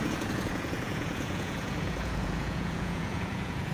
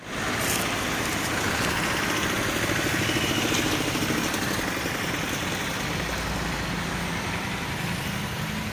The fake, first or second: first